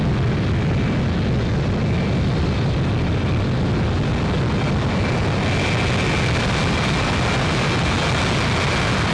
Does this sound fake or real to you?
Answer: real